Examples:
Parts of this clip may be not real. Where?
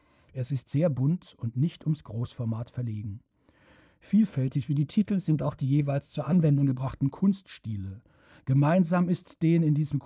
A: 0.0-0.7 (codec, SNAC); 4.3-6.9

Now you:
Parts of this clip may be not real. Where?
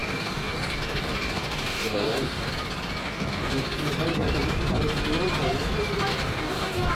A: 0.0-2.5 (codec, DAC); 3.0-3.9; 6.1-6.9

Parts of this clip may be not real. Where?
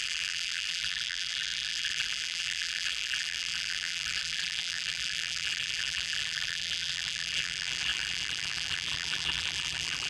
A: 0.0-10.1 (vocoder, BigVGAN v2)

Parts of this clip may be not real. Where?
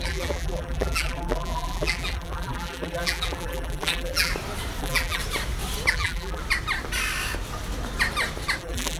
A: 0.0-4.3 (vocoder, BigVGAN v2); 4.8-5.2; 5.9-6.4; 8.6-9.0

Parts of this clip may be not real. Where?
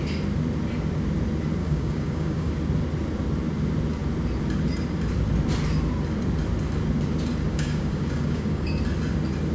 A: 1.6-2.5 (codec, DAC); 7.5-8.8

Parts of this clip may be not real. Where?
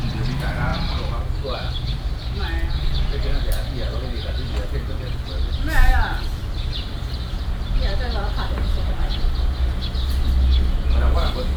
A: 0.7-2.4 (vocoder, BigVGAN v2); 6.4-8.9